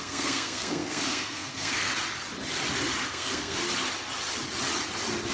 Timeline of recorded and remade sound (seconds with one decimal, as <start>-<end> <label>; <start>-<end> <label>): 0.0-1.9 remade; 1.9-3.1 recorded; 3.1-3.6 remade; 3.6-5.3 recorded